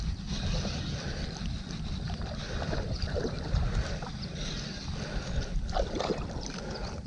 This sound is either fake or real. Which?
fake